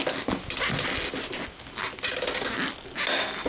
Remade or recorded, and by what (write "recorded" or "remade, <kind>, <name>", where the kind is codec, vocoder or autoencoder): recorded